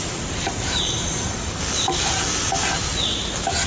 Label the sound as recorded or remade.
recorded